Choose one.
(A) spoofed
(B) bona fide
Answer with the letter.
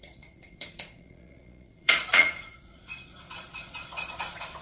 A